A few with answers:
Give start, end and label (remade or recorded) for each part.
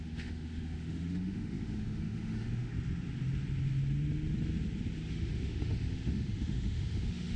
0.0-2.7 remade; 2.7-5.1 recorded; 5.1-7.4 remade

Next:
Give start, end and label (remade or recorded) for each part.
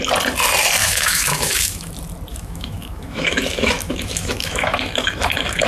0.0-0.8 recorded; 0.8-1.9 remade; 1.9-2.3 recorded; 2.3-5.7 remade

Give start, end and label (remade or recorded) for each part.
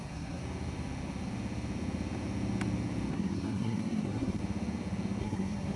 0.0-0.4 remade; 0.4-3.1 recorded; 3.1-4.4 remade; 4.4-5.2 recorded; 5.2-5.8 remade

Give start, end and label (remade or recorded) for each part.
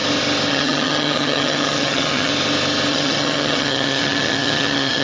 0.0-0.5 recorded; 0.5-2.3 remade; 2.3-2.9 recorded; 2.9-5.0 remade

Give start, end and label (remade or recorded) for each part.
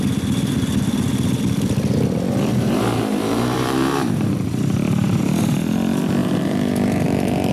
0.0-2.5 recorded; 2.5-5.2 remade; 5.2-6.2 recorded; 6.2-7.5 remade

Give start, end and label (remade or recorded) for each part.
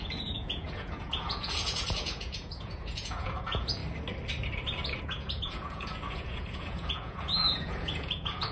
0.0-3.8 remade; 3.8-5.0 recorded; 5.0-8.5 remade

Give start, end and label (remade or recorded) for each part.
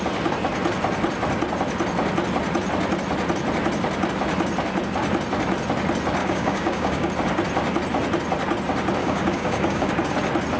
0.0-6.2 recorded; 6.2-7.1 remade; 7.1-9.0 recorded; 9.0-9.9 remade; 9.9-10.6 recorded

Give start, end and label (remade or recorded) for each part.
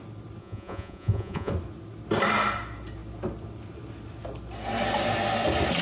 0.0-0.4 recorded; 0.4-1.5 remade; 1.5-5.8 recorded